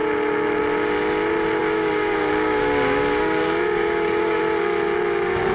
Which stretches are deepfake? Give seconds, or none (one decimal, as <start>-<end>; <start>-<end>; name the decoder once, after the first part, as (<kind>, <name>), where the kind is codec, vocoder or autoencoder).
1.6-4.4 (codec, DAC)